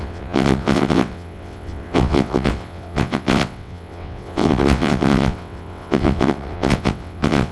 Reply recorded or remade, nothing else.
remade